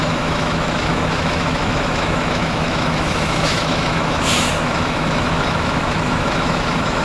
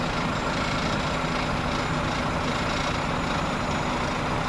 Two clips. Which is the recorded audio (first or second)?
second